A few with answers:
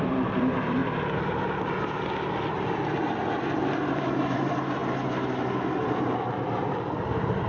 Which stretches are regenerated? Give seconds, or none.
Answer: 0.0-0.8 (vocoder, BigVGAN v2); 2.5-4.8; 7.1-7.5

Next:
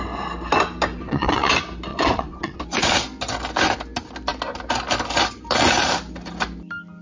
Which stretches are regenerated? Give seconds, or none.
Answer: 1.0-1.5 (vocoder, WaveNeXt); 1.9-2.6

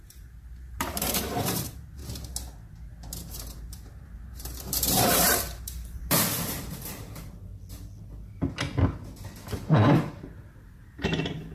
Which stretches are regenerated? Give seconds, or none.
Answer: 0.0-2.0 (vocoder, BigVGAN v2); 2.9-7.5; 10.1-11.5